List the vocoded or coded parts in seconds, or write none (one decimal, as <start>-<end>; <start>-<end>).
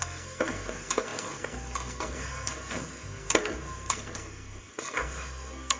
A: 0.0-5.8